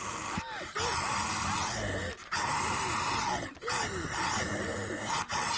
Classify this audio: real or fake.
real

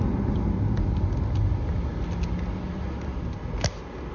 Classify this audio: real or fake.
real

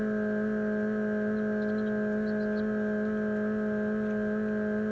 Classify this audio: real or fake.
real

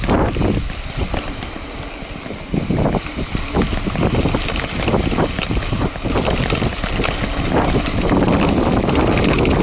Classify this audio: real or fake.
real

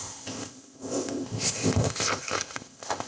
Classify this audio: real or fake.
fake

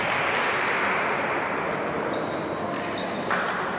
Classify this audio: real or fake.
real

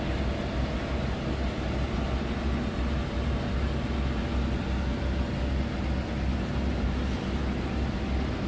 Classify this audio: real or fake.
real